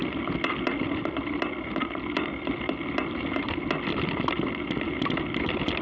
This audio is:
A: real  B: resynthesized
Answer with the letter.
A